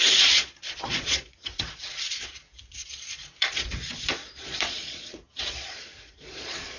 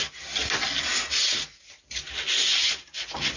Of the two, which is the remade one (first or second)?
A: first